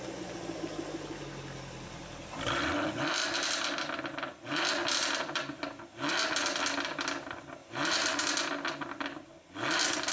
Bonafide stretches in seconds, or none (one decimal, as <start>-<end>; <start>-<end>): 0.0-7.6; 8.3-10.1